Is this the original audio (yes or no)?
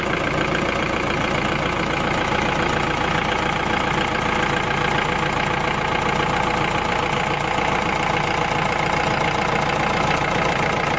yes